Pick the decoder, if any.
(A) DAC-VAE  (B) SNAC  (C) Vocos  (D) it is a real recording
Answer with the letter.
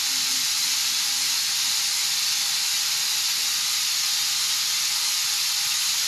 D